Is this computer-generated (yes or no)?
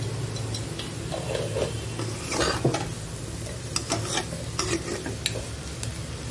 no